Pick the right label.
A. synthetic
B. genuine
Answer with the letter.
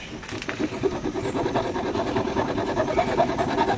B